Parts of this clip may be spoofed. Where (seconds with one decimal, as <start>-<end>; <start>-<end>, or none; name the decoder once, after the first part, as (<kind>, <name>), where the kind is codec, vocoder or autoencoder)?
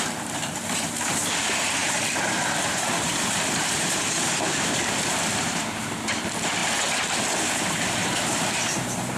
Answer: 0.0-6.6 (vocoder, BigVGAN v2); 7.5-9.2